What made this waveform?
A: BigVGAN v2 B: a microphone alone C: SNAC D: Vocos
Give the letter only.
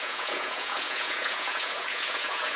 D